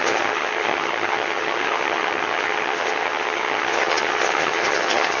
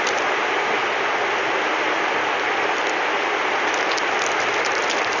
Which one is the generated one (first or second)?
first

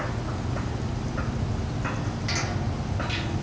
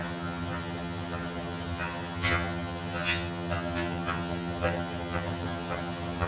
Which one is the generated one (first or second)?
second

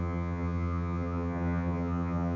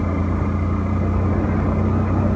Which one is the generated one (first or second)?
first